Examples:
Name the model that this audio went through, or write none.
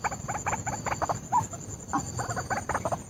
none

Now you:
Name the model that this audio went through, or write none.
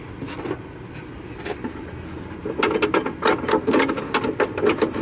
none